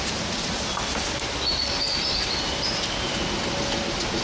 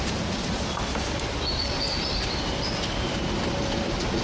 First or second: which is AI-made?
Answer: second